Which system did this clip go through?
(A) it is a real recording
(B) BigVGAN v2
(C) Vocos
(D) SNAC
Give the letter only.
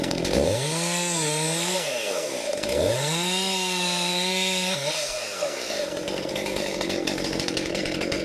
D